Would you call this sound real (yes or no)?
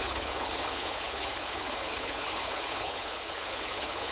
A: no